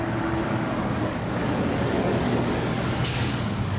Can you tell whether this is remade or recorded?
remade